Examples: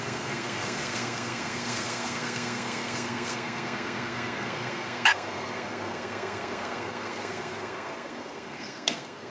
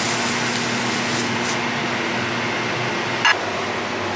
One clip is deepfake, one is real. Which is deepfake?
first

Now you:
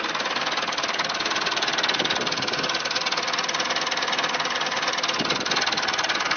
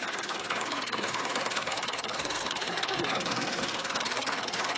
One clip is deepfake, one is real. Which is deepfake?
second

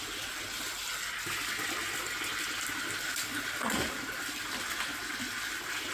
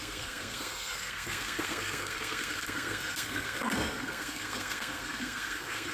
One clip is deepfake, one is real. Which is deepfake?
second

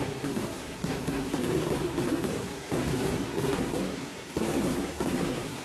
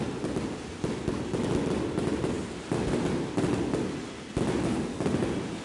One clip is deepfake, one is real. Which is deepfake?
first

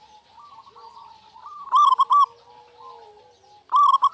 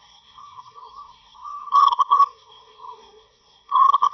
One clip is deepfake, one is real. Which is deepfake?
second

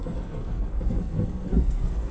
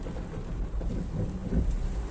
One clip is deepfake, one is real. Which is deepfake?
first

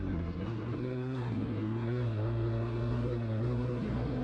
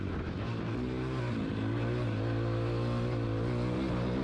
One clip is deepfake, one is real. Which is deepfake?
first